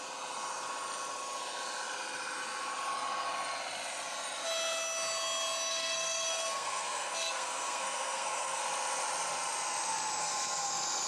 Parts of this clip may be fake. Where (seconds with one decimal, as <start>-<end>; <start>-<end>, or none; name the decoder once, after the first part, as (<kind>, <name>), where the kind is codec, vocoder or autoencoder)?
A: 5.7-8.6 (codec, SNAC); 10.2-10.7